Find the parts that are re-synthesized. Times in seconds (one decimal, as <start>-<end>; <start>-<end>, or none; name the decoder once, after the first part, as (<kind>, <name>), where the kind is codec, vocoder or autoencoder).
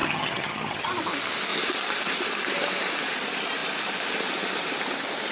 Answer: 0.0-0.9 (vocoder, HiFi-GAN)